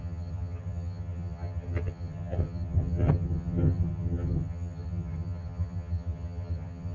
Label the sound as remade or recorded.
remade